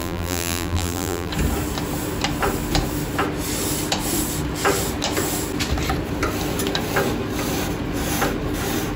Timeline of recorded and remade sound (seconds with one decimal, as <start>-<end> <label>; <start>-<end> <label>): 0.0-1.3 remade; 1.3-9.0 recorded